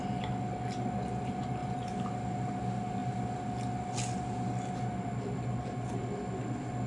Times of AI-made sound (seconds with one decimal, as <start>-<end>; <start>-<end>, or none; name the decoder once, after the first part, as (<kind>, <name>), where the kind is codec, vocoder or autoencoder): none